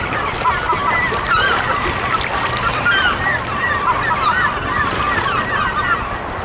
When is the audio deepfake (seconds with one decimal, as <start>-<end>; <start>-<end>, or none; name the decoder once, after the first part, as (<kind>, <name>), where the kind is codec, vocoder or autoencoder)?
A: none